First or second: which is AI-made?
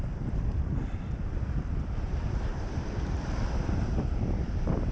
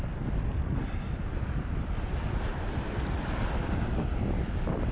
first